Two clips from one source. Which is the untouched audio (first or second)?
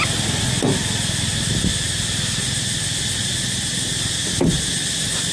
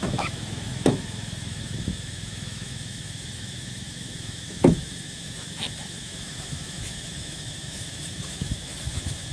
first